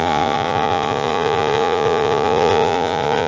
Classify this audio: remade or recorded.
remade